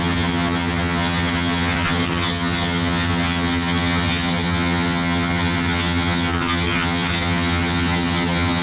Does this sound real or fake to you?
fake